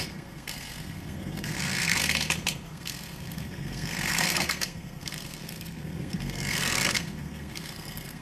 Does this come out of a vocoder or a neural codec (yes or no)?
yes